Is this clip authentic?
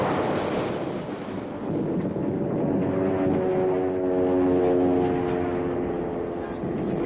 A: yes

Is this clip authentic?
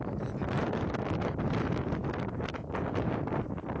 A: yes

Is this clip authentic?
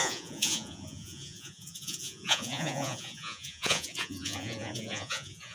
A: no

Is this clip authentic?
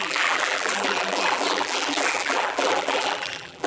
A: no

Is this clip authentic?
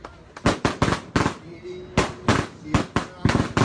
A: yes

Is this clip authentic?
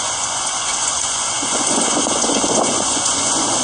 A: no